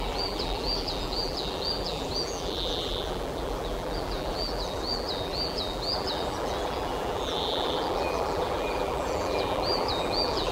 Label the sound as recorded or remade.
remade